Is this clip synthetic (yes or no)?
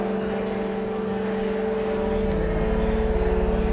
no